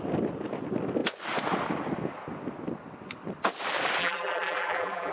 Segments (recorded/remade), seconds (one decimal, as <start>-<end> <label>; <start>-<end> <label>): 0.0-4.0 recorded; 4.0-5.1 remade